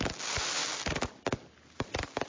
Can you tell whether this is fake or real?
real